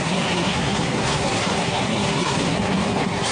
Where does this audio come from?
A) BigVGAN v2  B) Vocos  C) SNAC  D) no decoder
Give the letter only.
C